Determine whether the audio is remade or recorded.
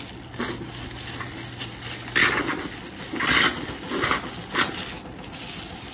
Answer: recorded